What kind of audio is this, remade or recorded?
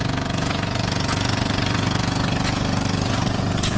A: remade